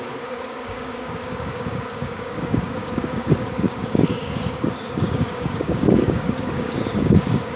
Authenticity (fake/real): fake